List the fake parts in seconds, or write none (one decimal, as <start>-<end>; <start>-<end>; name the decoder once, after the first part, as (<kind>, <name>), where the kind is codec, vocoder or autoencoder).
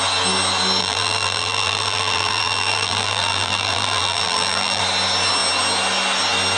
0.8-4.8 (vocoder, BigVGAN v2)